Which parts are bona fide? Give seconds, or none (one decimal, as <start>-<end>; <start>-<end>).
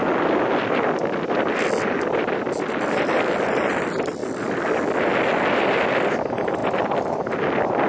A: 0.0-7.9